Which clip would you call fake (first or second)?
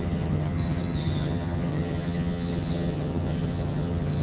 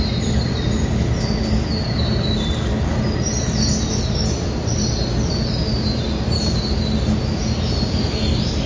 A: first